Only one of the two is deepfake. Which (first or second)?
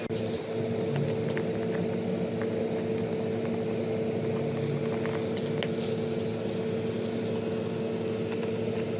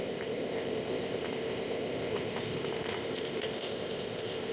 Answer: second